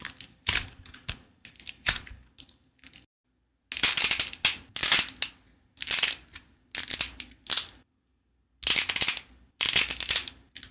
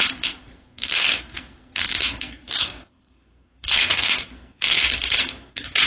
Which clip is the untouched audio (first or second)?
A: first